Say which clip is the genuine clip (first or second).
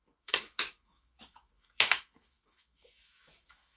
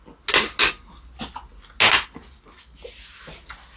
second